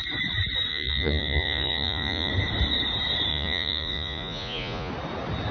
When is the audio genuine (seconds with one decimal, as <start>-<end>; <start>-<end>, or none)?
0.0-0.7; 2.3-3.3; 4.9-5.5